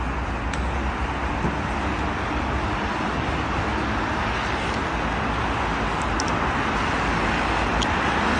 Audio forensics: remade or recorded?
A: recorded